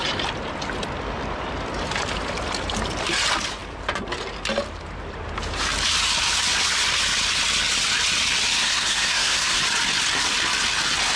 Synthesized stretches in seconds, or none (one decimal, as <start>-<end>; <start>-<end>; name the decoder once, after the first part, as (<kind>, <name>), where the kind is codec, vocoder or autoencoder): 8.6-9.6 (codec, SNAC)